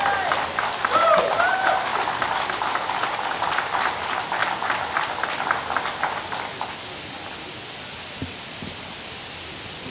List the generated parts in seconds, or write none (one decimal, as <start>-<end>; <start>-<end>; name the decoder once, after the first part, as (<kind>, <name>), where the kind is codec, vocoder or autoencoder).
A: none